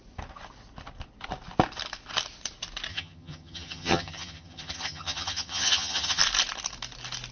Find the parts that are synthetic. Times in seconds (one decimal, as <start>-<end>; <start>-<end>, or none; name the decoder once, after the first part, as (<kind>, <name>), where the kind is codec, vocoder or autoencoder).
2.9-6.2 (vocoder, HiFi-GAN)